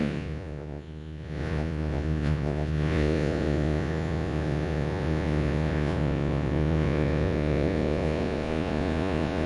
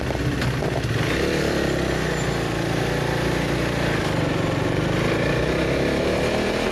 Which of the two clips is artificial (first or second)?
first